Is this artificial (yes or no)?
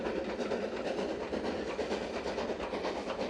no